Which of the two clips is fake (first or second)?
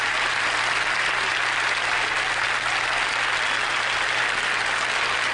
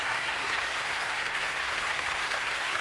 second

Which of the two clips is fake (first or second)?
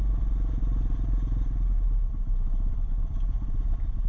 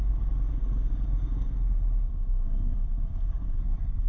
second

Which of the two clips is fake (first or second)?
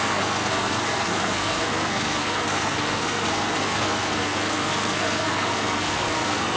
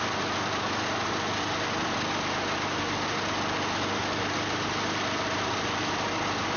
first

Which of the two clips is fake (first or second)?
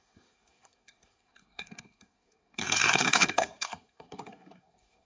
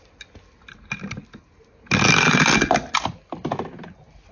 first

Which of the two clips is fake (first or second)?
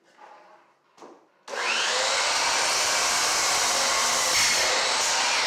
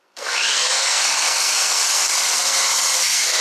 second